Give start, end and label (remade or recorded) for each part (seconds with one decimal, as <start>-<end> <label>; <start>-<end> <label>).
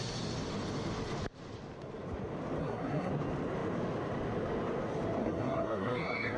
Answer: 0.0-2.6 recorded; 2.6-3.1 remade; 3.1-5.2 recorded; 5.2-6.4 remade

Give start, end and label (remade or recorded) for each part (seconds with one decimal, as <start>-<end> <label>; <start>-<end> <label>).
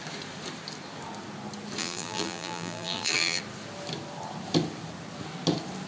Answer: 0.0-1.8 recorded; 1.8-3.4 remade; 3.4-5.9 recorded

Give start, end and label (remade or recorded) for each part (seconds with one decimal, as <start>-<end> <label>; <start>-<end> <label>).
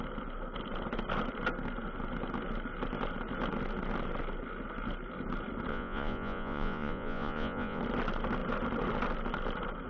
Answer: 0.0-5.7 recorded; 5.7-7.8 remade; 7.8-9.9 recorded